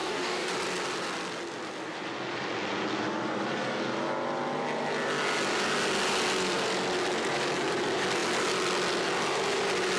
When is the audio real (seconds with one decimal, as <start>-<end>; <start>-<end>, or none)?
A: 0.5-10.0